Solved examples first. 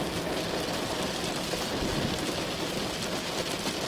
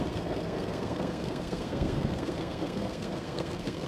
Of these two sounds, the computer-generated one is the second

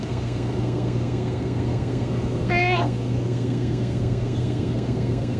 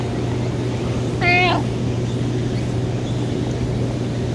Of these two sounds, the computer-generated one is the first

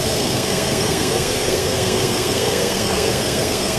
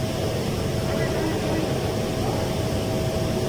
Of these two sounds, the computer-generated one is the first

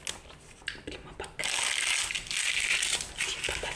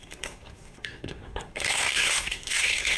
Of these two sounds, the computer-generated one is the second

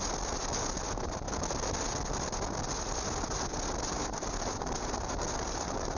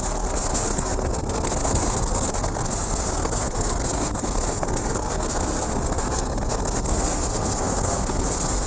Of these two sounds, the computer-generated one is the second